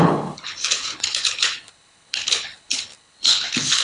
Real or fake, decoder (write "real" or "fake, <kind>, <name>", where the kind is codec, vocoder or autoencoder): fake, codec, HILCodec